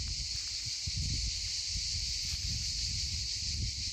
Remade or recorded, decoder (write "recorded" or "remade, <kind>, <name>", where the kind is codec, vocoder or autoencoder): recorded